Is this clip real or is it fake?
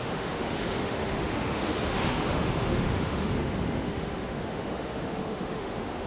fake